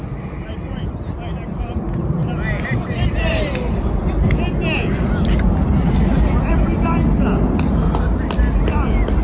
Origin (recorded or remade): recorded